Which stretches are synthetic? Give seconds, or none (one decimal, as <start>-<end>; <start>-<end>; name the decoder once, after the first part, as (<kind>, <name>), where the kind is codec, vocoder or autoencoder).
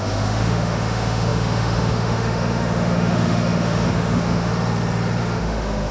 0.0-4.5 (autoencoder, DAC-VAE); 5.2-5.9